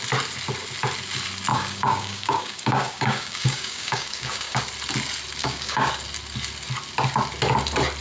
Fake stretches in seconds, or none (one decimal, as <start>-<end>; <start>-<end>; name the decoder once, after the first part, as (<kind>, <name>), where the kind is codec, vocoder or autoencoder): 1.5-4.6 (codec, DAC); 5.4-5.9